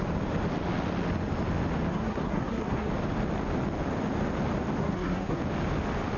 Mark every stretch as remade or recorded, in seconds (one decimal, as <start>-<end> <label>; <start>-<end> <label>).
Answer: 0.0-1.9 recorded; 1.9-2.9 remade; 2.9-4.8 recorded; 4.8-5.4 remade; 5.4-6.2 recorded